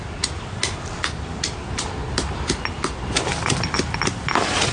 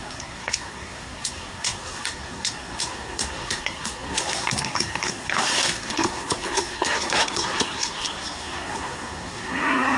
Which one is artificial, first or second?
second